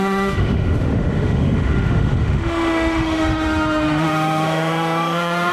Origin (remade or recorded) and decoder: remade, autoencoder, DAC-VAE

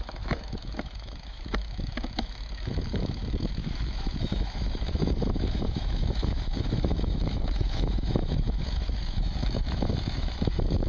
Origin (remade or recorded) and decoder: remade, autoencoder, DAC-VAE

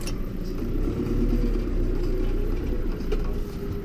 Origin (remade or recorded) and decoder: recorded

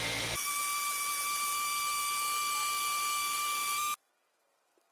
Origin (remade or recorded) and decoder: recorded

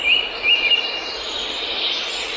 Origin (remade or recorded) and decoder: recorded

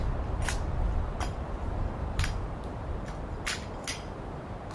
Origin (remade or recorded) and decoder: recorded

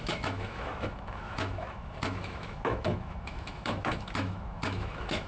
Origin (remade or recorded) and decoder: remade, autoencoder, DAC-VAE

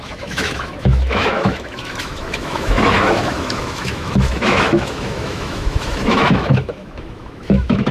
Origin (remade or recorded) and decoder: remade, autoencoder, DAC-VAE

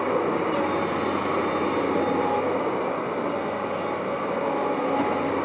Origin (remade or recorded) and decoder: recorded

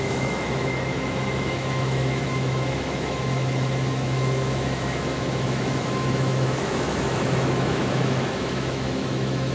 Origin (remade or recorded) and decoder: remade, autoencoder, DAC-VAE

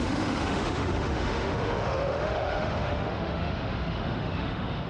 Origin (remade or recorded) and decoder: remade, autoencoder, DAC-VAE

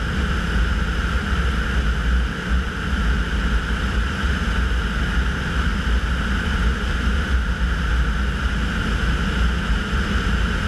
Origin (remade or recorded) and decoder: recorded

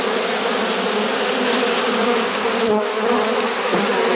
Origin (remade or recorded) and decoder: recorded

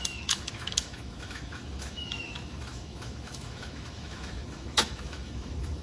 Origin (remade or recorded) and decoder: remade, autoencoder, DAC-VAE